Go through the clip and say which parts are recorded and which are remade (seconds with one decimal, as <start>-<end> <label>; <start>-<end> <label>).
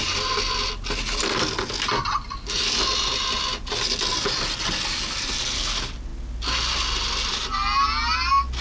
0.0-8.6 recorded